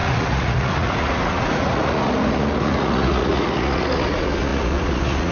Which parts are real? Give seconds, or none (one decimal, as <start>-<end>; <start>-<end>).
none